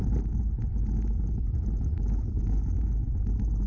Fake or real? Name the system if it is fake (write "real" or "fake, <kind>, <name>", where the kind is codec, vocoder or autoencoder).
real